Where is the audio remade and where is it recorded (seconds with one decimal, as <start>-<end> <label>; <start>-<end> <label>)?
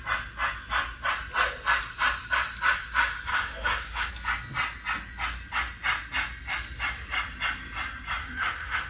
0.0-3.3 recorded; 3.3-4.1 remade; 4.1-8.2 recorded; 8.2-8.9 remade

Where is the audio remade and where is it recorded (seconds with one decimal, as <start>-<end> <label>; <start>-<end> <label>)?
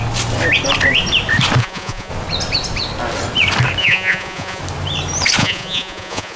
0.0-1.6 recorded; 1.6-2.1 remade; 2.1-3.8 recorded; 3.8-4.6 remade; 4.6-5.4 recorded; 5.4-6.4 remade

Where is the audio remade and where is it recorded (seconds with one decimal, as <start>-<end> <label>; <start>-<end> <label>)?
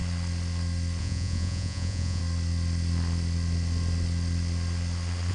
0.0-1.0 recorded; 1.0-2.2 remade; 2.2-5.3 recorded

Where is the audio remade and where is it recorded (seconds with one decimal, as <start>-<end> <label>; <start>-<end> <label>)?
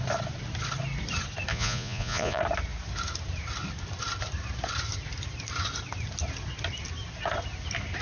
0.0-1.5 recorded; 1.5-2.4 remade; 2.4-8.0 recorded